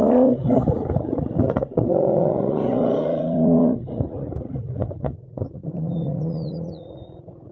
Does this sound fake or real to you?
fake